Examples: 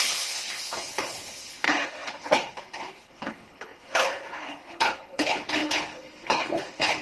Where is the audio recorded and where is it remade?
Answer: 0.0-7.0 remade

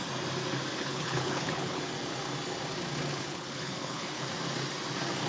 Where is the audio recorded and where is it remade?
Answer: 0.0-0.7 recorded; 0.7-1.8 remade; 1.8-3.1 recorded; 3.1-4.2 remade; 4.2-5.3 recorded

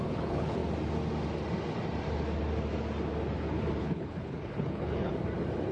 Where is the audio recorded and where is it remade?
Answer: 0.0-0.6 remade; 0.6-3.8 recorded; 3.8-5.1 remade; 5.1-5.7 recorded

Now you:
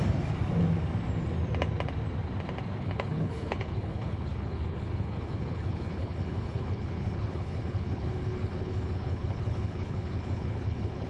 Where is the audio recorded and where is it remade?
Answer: 0.0-2.8 recorded; 2.8-11.1 remade